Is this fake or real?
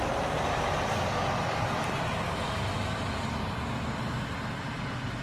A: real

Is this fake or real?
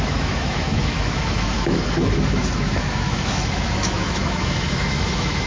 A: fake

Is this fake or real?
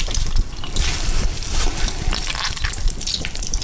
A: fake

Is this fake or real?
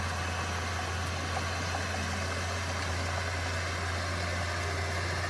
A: real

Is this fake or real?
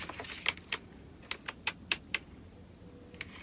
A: real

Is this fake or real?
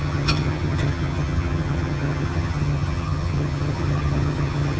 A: fake